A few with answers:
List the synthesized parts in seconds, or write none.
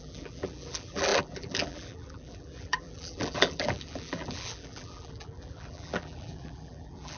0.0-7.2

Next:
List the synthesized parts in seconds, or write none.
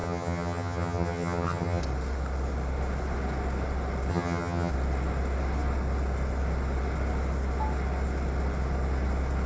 0.0-1.8; 4.1-4.7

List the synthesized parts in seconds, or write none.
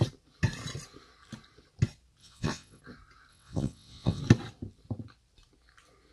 2.2-2.8; 3.3-4.2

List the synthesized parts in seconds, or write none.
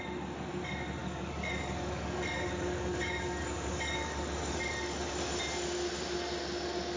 1.0-5.1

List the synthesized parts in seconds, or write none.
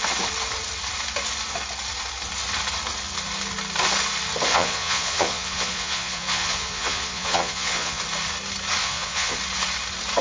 4.5-8.0; 8.8-9.4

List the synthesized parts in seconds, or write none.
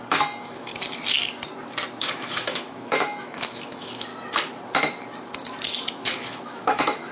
0.0-0.7; 2.0-4.1; 5.9-7.1